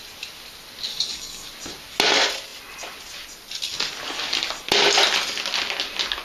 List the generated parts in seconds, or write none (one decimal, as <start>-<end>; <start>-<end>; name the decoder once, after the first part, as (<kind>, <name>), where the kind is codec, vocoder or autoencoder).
0.9-1.5 (codec, DAC)